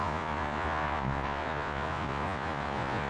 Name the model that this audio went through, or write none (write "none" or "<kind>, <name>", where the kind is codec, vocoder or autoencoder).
vocoder, Vocos